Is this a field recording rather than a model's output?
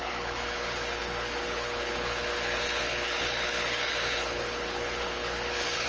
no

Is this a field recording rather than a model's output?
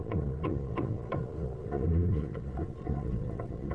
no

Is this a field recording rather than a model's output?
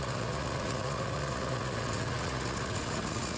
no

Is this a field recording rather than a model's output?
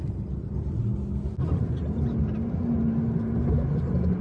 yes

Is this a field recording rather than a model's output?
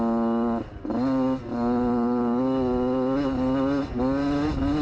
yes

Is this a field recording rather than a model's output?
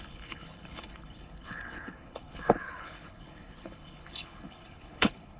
no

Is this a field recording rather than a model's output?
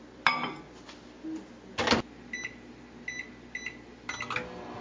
yes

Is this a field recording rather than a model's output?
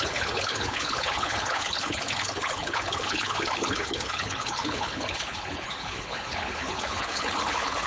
no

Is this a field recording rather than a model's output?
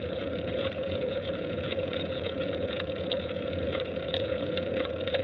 no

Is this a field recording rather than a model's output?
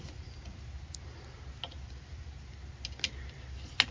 yes